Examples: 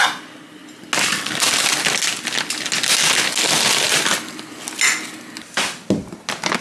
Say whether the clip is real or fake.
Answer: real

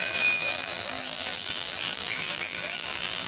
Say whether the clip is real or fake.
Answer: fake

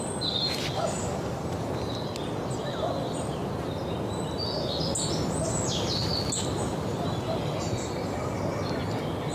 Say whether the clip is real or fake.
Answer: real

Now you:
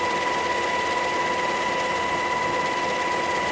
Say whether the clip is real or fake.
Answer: real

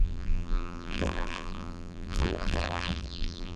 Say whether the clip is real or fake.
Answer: fake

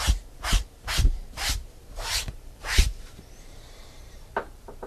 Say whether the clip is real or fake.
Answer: fake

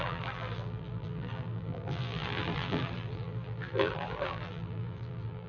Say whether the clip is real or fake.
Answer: fake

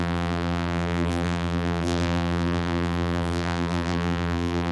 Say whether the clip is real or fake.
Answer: fake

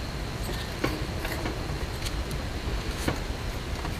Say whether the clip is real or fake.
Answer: real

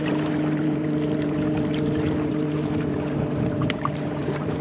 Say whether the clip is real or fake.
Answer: fake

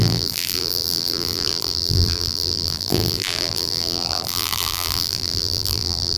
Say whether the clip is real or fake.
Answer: fake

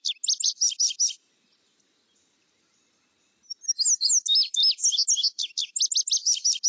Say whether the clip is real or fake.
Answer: real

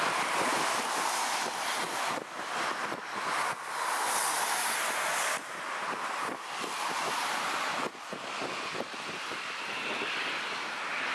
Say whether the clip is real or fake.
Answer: real